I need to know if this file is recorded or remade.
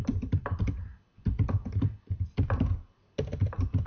recorded